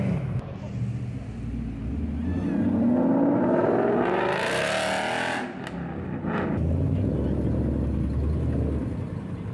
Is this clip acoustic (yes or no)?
yes